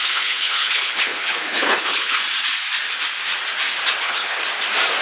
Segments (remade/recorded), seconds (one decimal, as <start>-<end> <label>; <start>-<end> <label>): 0.0-2.2 remade; 2.2-4.0 recorded; 4.0-4.4 remade; 4.4-5.0 recorded